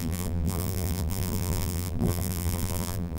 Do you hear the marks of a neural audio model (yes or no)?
yes